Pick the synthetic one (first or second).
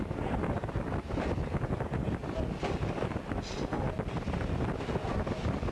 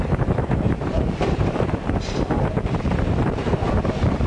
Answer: second